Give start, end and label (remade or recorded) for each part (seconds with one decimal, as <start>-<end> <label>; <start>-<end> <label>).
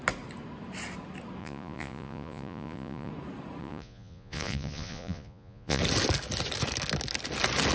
0.0-1.4 recorded; 1.4-3.1 remade; 3.1-3.6 recorded; 3.6-5.8 remade; 5.8-7.7 recorded